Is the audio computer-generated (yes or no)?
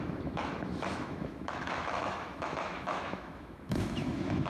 yes